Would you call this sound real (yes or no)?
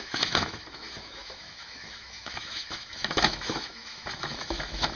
no